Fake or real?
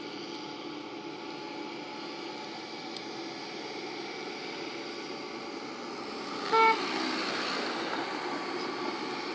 real